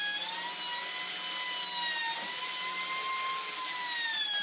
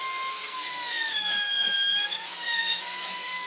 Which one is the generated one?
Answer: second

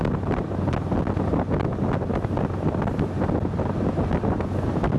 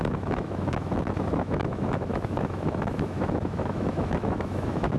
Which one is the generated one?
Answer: second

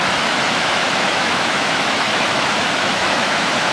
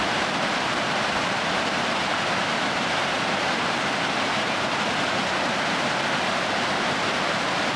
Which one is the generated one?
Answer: first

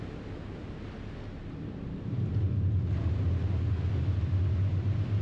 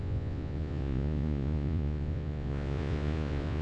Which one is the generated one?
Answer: second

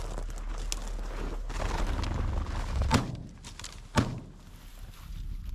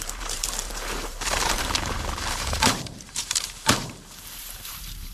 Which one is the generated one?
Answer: second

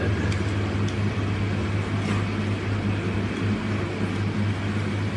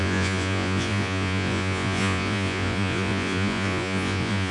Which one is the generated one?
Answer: second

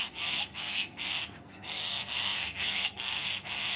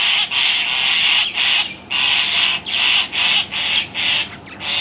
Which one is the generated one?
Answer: first